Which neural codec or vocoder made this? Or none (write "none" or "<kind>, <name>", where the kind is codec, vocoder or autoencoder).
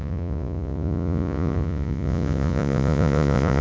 vocoder, Vocos